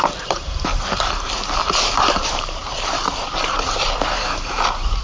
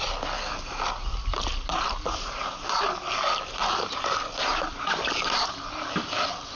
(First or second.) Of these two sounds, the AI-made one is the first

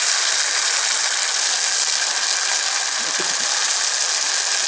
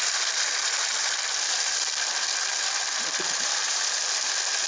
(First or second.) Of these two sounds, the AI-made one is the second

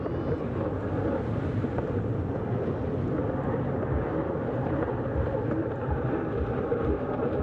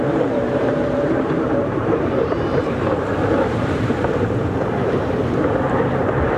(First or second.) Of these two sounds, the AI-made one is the second